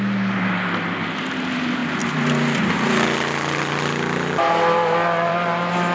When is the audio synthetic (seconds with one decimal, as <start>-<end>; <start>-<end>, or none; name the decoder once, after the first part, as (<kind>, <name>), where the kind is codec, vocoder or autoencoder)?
none